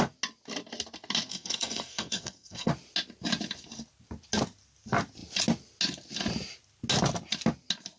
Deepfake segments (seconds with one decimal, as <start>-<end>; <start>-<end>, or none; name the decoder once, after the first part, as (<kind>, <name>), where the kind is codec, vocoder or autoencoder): 1.3-2.7 (codec, SNAC)